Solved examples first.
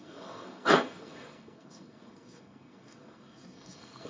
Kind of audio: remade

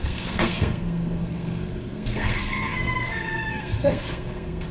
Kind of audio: remade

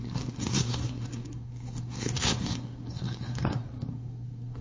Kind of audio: remade